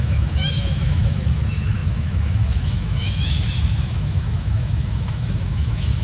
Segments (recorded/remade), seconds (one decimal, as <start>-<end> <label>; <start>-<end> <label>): 0.0-6.0 remade